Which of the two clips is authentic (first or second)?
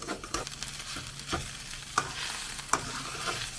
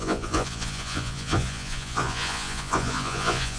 first